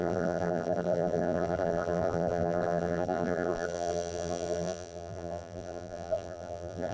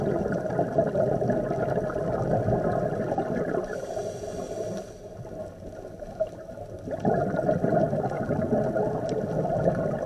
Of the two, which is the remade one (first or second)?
first